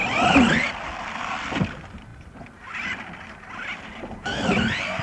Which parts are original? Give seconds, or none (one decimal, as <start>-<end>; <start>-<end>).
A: 0.0-5.0